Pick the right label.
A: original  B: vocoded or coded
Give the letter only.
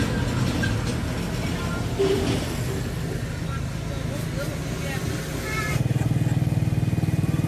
A